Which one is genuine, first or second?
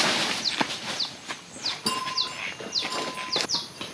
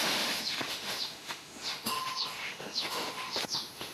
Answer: first